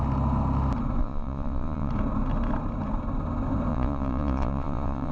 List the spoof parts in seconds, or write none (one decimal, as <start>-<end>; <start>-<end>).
1.0-1.9; 3.7-5.1